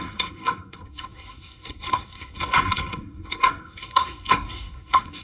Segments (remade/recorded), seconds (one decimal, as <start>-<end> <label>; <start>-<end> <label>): 0.0-5.2 remade